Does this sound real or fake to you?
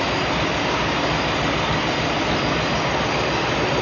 real